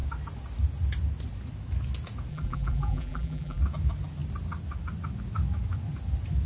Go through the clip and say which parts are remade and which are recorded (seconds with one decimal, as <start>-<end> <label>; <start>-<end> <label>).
0.0-2.3 recorded; 2.3-3.6 remade; 3.6-6.5 recorded